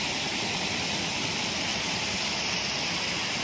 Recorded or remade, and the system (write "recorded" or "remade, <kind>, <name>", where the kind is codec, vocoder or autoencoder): recorded